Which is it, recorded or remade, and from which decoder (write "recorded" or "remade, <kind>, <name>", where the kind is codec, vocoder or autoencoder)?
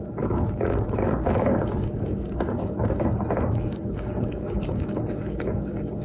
remade, codec, DAC